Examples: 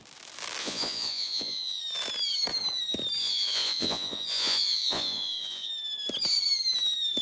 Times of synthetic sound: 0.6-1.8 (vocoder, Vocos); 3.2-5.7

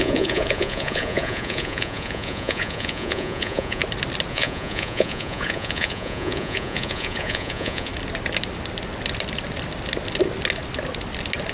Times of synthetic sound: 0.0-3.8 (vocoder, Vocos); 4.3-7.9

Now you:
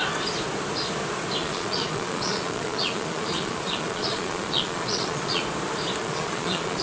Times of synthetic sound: 1.4-5.4 (vocoder, Vocos); 6.0-6.8

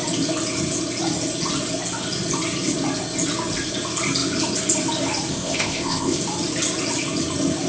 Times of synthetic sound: 5.3-6.2 (codec, ZipCodec)

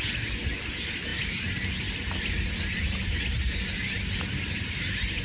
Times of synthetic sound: none

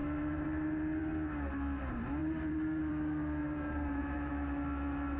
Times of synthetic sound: 0.0-1.0 (vocoder, BigVGAN v2); 2.2-2.9; 3.4-4.3

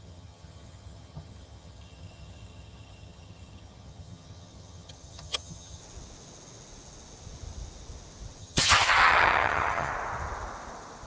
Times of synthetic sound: 0.0-5.8 (vocoder, HiFi-GAN); 8.4-9.9

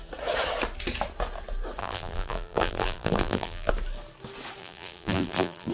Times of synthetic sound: 1.8-3.7 (vocoder, BigVGAN v2); 4.6-5.7